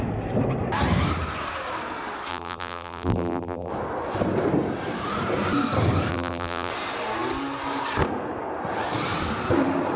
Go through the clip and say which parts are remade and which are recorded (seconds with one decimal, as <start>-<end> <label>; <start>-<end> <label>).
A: 0.0-2.3 recorded; 2.3-3.7 remade; 3.7-6.1 recorded; 6.1-6.7 remade; 6.7-10.0 recorded